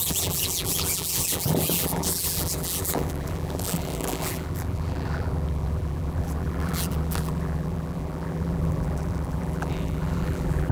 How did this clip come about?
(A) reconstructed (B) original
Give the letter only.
A